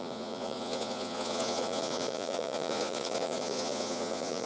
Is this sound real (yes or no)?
no